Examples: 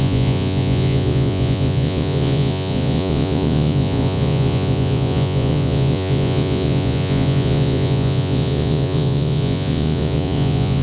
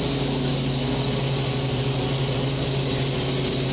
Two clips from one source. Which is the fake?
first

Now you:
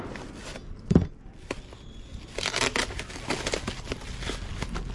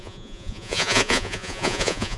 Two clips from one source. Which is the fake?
second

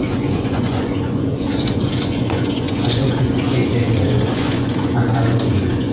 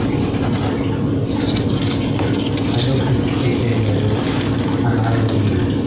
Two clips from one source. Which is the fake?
first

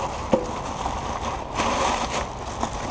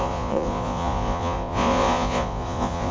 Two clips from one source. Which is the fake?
second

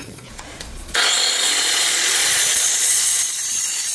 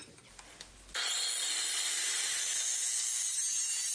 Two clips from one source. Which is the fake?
first